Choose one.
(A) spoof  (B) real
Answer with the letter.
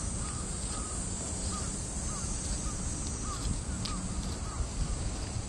B